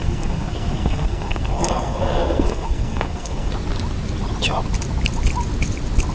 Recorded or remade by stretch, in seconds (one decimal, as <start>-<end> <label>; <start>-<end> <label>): 0.0-3.5 remade; 3.5-6.1 recorded